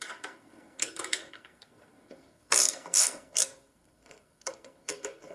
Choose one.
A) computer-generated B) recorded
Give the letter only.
A